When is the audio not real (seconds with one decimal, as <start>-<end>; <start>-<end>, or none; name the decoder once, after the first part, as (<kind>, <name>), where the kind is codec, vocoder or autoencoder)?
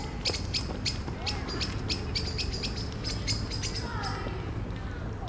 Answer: none